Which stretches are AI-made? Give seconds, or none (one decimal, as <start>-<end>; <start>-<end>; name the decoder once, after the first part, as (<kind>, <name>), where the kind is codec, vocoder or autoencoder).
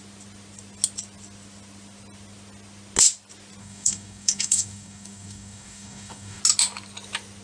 3.6-6.4 (codec, DAC)